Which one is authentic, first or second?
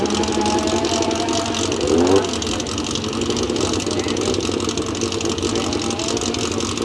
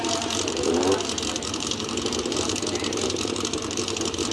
first